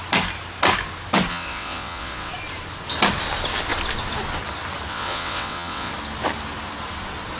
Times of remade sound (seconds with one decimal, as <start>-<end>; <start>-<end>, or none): 1.3-2.3; 4.9-5.9